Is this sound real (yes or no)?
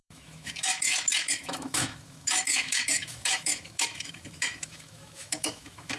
no